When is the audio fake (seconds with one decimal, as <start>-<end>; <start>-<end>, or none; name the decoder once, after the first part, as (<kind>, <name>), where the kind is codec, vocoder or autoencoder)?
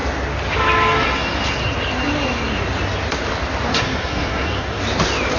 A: 3.7-4.8 (codec, SNAC)